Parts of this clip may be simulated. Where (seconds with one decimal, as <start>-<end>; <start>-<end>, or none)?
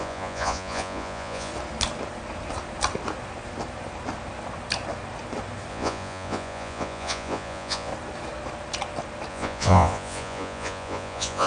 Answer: 0.0-1.5; 5.7-7.9; 9.3-11.5